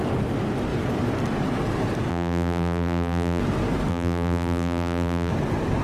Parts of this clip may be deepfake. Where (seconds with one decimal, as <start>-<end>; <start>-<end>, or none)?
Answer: 2.1-3.4; 3.9-5.3